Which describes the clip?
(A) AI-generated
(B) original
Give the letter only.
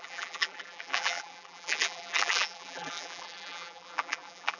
A